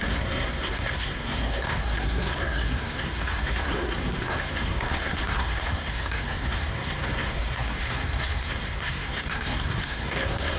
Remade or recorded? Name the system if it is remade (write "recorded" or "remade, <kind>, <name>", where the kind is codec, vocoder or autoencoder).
remade, codec, SNAC